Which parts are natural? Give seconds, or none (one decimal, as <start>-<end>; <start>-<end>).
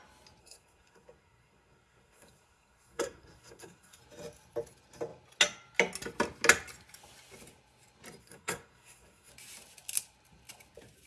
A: 0.0-0.4; 4.0-8.2; 9.3-11.1